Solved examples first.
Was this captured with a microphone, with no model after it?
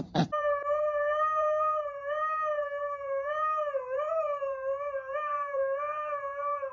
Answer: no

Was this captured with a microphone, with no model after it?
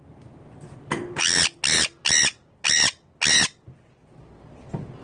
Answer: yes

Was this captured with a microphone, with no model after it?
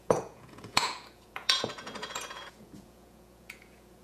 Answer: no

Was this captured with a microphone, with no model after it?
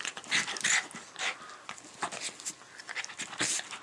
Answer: yes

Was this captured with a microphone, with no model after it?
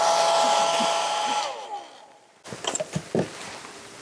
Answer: yes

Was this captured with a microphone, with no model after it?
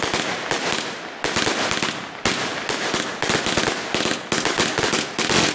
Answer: yes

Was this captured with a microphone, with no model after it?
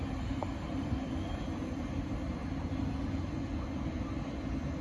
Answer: yes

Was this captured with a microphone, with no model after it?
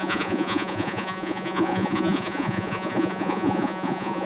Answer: no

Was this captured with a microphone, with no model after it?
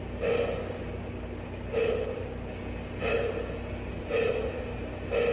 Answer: yes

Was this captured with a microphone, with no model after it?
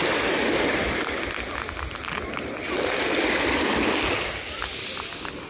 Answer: yes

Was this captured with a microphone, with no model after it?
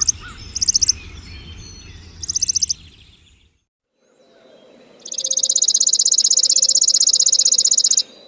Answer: yes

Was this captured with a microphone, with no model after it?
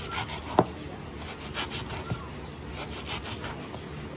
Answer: yes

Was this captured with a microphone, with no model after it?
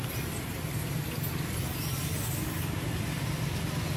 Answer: yes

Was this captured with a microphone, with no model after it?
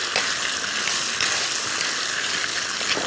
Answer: yes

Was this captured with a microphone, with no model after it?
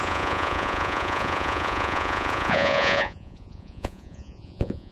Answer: no